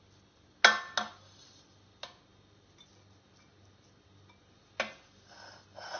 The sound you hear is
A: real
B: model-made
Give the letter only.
A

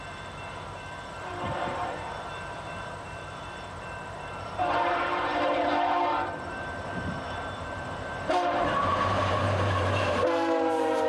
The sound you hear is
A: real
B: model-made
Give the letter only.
B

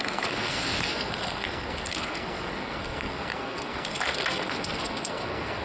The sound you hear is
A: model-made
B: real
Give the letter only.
A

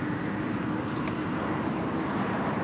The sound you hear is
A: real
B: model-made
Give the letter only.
A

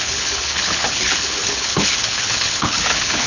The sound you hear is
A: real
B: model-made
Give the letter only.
B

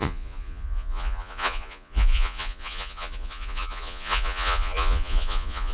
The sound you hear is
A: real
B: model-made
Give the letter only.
B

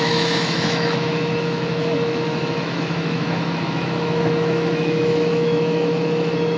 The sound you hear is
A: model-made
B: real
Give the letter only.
A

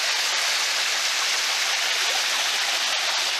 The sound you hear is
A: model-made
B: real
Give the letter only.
B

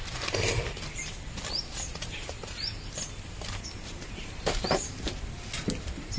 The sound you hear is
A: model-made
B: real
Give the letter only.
A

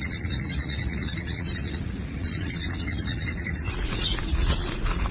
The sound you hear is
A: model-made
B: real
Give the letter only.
A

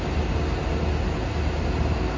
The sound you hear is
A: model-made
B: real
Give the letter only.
B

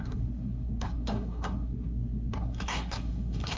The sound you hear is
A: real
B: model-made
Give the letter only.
B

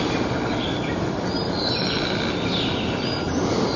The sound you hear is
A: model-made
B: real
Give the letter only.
B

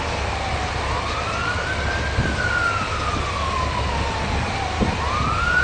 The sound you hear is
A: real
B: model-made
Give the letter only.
A